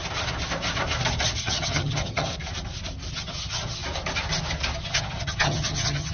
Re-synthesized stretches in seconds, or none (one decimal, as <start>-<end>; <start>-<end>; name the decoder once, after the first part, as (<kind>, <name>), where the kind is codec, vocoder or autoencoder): 1.4-2.3 (vocoder, HiFi-GAN); 3.1-3.8; 4.8-6.1